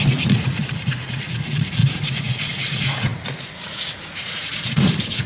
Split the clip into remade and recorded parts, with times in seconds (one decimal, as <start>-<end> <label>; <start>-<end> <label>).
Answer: 0.0-5.3 remade